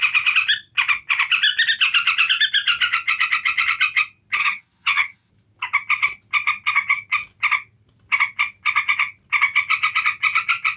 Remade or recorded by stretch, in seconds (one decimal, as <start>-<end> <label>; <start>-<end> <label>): 0.0-4.4 recorded; 4.4-5.3 remade; 5.3-10.8 recorded